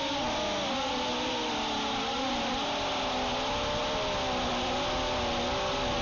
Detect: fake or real real